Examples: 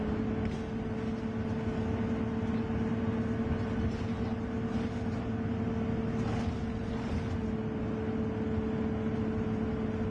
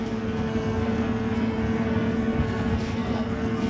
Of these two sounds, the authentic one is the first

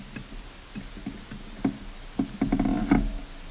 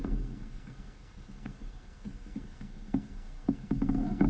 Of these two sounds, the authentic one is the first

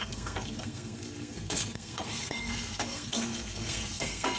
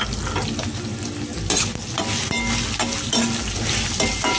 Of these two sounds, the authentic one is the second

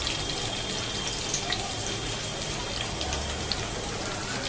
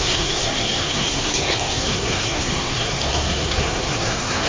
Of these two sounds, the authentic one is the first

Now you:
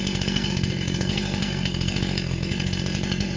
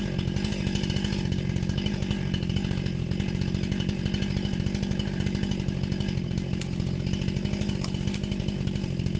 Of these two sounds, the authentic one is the second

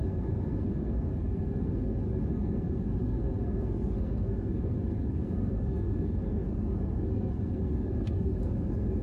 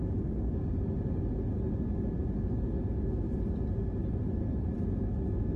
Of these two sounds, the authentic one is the second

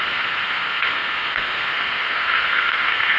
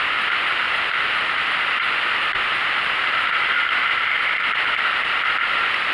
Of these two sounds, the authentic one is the second